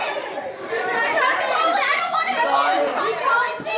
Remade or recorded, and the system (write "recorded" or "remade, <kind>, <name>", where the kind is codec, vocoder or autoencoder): recorded